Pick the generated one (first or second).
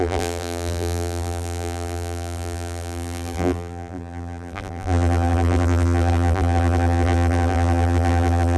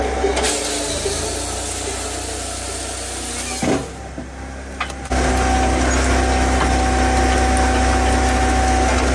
first